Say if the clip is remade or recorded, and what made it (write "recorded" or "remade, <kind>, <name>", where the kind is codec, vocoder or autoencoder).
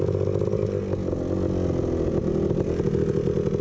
recorded